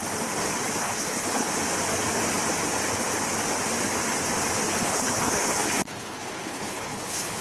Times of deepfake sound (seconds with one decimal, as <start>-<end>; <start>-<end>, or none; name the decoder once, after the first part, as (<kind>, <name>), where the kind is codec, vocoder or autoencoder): 0.8-1.5 (codec, HILCodec); 4.8-7.4